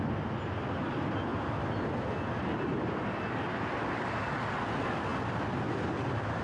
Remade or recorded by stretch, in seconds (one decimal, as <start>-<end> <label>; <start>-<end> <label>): 0.0-6.4 recorded